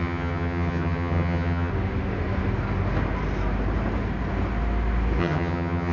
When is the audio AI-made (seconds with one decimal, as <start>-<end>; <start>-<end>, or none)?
0.0-1.7; 5.2-5.9